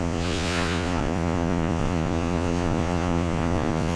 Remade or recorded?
remade